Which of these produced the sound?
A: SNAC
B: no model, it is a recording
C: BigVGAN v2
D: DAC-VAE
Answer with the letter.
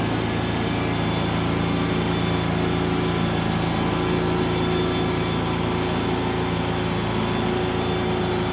B